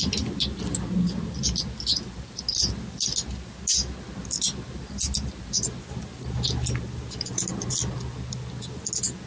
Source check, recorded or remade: recorded